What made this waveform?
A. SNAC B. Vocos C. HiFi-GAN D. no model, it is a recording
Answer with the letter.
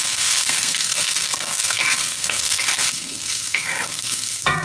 A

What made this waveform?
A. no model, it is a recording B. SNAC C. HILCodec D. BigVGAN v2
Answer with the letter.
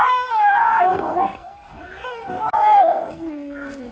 B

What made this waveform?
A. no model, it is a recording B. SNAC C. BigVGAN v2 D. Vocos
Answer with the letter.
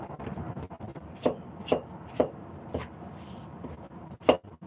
A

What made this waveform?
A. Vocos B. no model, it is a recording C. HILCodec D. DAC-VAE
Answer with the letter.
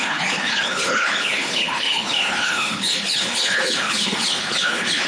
C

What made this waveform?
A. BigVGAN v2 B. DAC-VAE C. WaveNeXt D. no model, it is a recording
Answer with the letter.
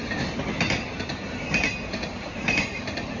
D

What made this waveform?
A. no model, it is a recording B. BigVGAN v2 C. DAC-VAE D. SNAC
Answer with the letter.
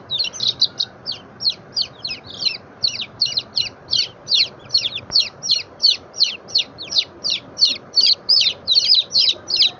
B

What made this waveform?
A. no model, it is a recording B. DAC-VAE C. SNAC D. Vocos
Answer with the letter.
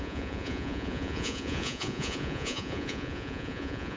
D